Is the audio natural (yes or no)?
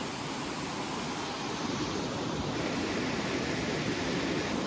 yes